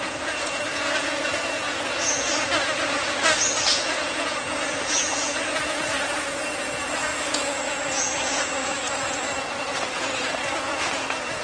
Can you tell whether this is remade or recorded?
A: remade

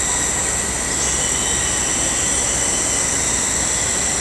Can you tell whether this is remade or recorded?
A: recorded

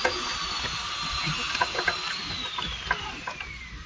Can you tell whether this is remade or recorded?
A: recorded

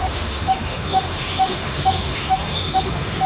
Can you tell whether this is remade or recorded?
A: remade